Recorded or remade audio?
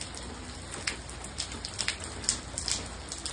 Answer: recorded